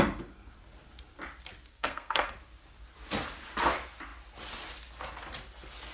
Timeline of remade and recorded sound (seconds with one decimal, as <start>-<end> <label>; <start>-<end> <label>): 0.0-1.7 recorded; 1.7-2.3 remade; 2.3-5.9 recorded